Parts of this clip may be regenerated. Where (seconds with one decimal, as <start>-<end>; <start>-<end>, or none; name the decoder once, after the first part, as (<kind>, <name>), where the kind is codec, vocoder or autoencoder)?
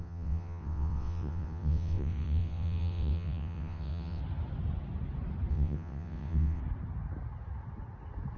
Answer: 0.0-4.2 (vocoder, WaveNeXt); 5.5-6.6